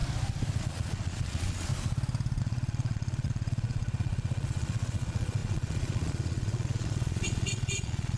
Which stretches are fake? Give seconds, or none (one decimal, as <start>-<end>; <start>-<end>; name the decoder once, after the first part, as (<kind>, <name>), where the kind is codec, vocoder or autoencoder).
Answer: 0.6-1.7 (vocoder, Vocos); 2.4-8.2

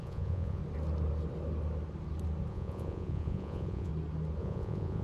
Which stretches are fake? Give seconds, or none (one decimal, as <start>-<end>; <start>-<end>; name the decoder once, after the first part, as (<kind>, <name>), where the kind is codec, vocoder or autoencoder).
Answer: 0.0-0.6 (vocoder, Vocos); 2.5-3.9; 4.4-5.0

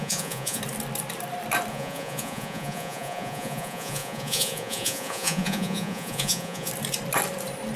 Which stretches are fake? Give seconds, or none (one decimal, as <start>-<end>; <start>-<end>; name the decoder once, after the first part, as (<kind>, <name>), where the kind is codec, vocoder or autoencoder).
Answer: 0.0-0.6 (vocoder, Vocos); 1.7-6.7

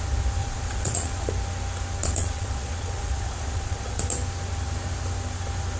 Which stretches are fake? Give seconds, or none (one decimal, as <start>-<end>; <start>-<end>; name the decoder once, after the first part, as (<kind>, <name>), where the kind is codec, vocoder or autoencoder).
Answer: 0.4-1.3 (vocoder, Vocos); 2.0-4.0

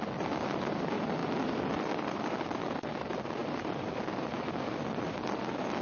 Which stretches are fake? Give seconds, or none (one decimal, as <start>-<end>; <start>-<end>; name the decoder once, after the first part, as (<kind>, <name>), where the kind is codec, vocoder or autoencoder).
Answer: none

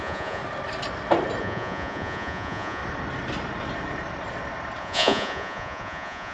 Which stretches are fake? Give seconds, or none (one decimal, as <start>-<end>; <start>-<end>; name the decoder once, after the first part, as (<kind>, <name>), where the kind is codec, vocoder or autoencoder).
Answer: 0.0-0.4 (vocoder, Vocos); 1.4-2.8; 4.8-6.3

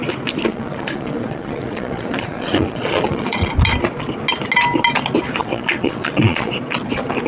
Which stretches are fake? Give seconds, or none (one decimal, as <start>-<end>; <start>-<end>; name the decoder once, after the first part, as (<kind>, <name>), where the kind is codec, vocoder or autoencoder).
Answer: 0.5-3.5 (vocoder, Vocos); 5.4-6.5

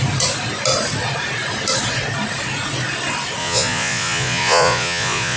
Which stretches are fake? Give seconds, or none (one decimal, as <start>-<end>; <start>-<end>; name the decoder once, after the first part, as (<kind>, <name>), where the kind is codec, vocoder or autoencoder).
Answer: 3.4-5.4 (vocoder, Vocos)